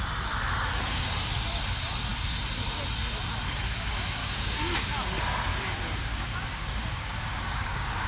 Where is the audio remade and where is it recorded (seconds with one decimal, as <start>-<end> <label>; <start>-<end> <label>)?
0.0-4.2 recorded; 4.2-4.8 remade; 4.8-5.5 recorded; 5.5-8.1 remade